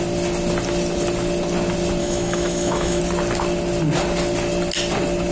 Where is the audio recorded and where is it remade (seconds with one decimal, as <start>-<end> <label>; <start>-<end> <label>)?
0.0-2.0 recorded; 2.0-3.0 remade; 3.0-5.3 recorded